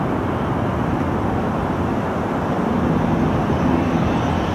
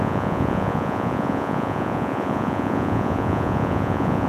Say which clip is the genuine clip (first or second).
first